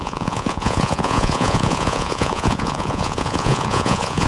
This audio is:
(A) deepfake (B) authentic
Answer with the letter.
A